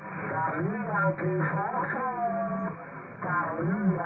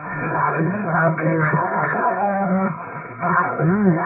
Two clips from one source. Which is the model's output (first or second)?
second